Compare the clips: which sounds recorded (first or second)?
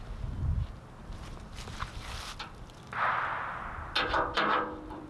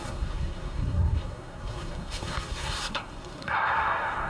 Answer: first